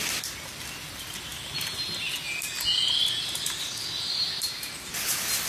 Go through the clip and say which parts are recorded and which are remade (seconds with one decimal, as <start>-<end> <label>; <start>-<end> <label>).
0.0-5.5 recorded

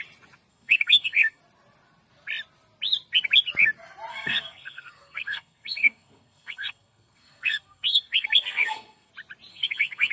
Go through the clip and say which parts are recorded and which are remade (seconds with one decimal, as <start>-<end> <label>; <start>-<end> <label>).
0.0-0.5 recorded; 0.5-1.4 remade; 1.4-4.1 recorded; 4.1-9.1 remade; 9.1-9.5 recorded; 9.5-10.1 remade